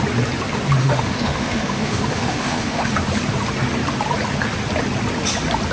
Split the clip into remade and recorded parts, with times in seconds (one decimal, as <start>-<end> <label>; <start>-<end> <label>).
0.0-0.8 recorded; 0.8-2.9 remade; 2.9-5.7 recorded